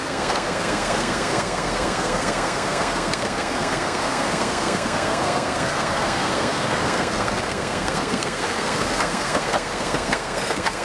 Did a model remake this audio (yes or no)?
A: yes